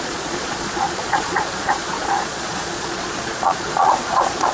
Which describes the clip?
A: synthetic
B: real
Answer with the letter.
A